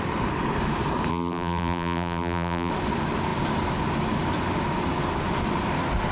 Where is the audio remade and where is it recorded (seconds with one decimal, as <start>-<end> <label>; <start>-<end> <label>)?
0.0-1.1 recorded; 1.1-2.7 remade; 2.7-6.1 recorded